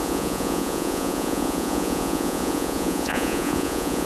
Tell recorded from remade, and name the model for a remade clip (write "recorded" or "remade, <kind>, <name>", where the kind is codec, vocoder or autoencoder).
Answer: remade, vocoder, Vocos